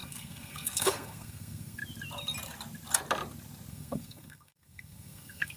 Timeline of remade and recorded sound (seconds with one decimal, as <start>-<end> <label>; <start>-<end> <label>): 0.0-1.8 remade; 1.8-3.7 recorded; 3.7-5.6 remade